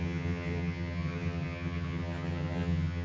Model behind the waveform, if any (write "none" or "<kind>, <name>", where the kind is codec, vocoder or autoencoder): vocoder, HiFi-GAN